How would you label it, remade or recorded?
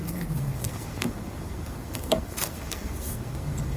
remade